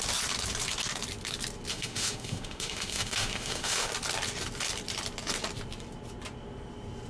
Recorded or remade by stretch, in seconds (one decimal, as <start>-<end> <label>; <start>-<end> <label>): 0.0-1.7 recorded; 1.7-3.9 remade; 3.9-7.1 recorded